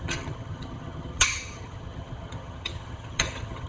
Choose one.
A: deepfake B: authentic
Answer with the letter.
A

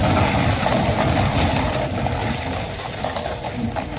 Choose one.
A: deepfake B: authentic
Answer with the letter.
B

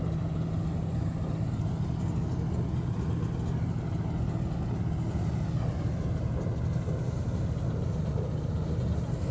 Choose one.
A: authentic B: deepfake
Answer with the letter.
A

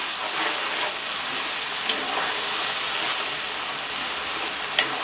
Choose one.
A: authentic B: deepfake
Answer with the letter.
A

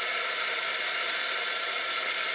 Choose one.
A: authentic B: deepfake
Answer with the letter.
A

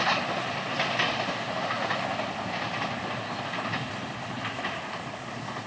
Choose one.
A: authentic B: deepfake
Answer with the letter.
A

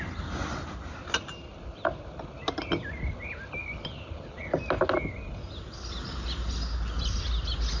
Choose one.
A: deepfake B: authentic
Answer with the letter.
B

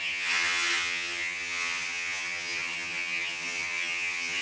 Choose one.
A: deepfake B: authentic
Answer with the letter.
A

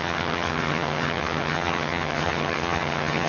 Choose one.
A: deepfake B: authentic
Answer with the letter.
A